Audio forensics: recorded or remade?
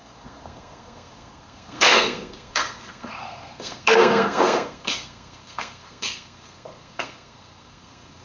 remade